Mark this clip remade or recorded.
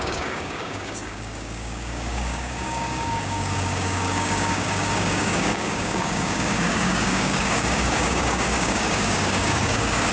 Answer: remade